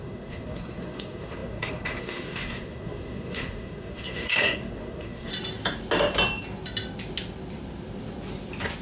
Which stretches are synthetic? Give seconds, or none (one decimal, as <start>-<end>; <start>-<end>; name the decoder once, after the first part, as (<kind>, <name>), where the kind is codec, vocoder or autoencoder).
0.0-5.3 (codec, SNAC)